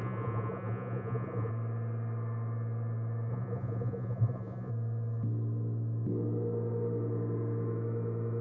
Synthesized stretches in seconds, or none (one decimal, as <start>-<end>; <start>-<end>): 0.0-1.5; 3.3-4.7